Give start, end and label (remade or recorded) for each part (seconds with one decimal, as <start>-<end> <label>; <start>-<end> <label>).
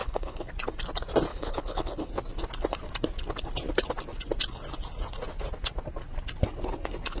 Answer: 0.0-0.5 remade; 0.5-1.3 recorded; 1.3-2.1 remade; 2.1-7.2 recorded